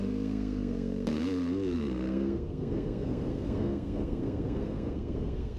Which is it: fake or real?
fake